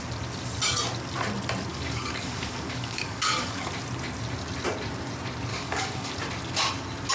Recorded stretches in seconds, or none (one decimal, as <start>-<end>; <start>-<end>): 0.0-1.7; 3.7-5.5; 6.1-7.1